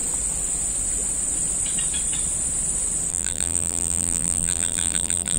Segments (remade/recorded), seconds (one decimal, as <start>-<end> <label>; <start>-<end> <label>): 0.0-3.1 recorded; 3.1-5.4 remade